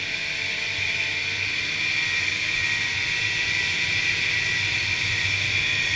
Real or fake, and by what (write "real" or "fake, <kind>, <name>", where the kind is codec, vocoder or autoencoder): fake, vocoder, BigVGAN v2